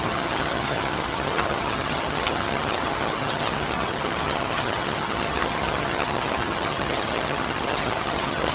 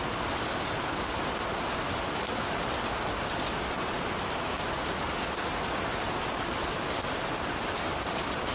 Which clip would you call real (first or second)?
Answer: second